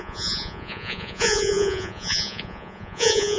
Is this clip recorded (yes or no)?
no